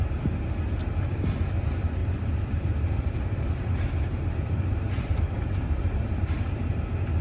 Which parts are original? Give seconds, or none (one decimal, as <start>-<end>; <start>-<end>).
none